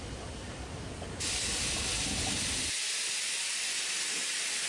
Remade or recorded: recorded